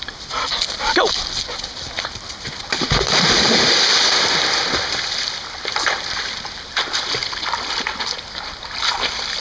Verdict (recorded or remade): remade